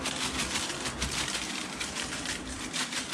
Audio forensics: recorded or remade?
remade